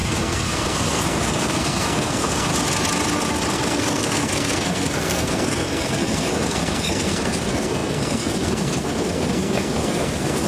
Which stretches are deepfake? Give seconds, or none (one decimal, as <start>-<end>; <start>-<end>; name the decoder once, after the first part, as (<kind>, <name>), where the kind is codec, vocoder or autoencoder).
0.0-2.5 (codec, SNAC); 3.5-10.5